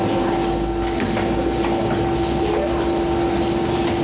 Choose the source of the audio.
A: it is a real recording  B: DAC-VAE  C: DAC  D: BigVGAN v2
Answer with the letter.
A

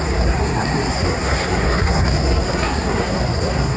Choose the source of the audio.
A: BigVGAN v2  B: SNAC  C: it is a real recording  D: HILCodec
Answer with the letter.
B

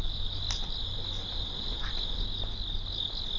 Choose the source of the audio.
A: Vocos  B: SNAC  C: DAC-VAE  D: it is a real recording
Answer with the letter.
D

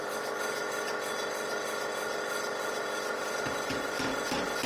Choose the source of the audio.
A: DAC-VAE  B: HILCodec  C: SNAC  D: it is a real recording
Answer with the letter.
D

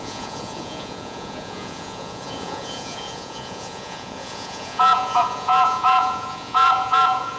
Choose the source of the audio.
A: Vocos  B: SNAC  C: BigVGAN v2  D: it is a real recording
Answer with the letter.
A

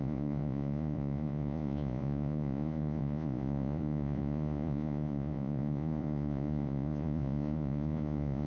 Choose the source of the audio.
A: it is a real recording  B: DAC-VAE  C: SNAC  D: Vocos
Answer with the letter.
D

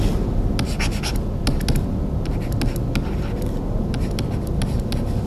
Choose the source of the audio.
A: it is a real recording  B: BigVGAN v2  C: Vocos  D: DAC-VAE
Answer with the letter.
A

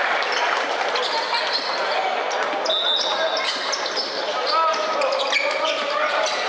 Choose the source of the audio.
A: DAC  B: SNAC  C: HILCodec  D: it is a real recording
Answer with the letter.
D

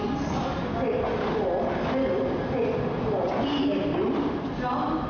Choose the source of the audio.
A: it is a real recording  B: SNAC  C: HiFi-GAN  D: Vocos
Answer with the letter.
A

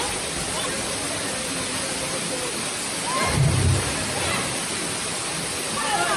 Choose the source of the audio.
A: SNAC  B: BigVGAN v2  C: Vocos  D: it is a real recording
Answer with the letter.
D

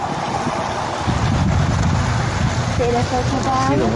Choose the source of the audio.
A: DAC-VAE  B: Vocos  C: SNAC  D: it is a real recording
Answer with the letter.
D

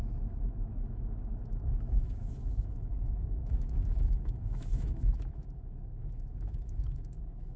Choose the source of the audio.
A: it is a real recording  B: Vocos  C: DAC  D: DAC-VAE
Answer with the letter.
D